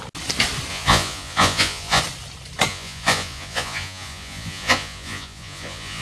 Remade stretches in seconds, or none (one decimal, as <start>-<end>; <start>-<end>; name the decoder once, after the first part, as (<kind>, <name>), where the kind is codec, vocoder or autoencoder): 0.7-2.0 (vocoder, Vocos); 2.7-6.0